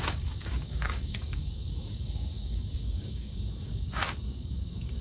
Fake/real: fake